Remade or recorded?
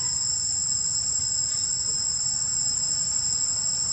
recorded